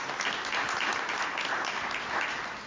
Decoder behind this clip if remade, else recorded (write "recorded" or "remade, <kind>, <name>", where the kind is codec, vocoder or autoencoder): recorded